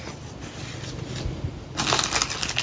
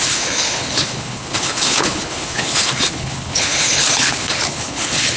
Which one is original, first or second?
first